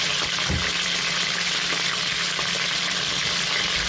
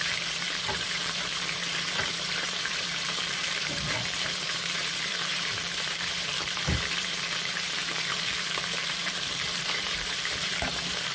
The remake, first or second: second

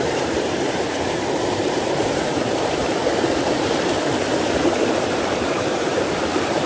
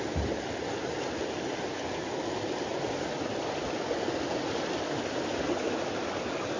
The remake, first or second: first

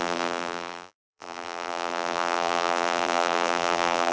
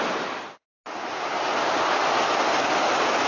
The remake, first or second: first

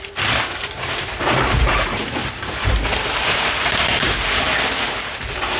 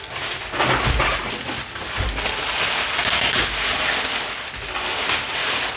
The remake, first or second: first